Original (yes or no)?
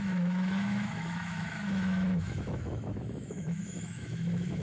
no